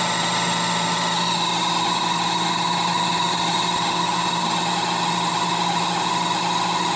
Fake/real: real